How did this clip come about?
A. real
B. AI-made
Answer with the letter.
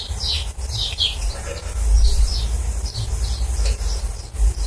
A